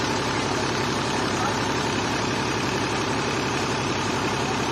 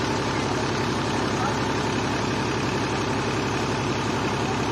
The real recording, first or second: second